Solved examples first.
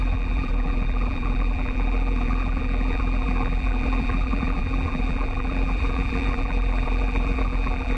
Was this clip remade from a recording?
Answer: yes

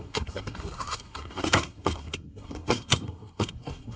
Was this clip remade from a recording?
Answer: yes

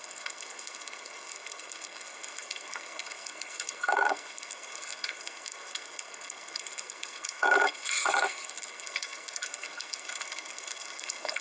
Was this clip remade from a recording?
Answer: yes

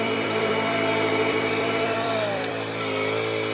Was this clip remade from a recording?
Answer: yes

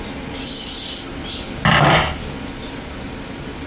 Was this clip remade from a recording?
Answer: no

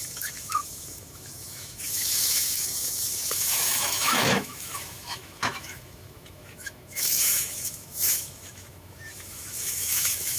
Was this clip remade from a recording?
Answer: yes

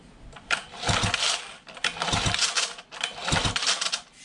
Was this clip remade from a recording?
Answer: no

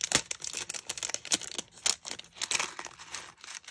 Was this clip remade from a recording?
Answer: no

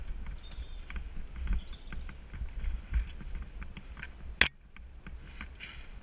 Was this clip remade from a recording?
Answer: no